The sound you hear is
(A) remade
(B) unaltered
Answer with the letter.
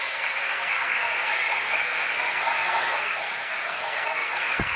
A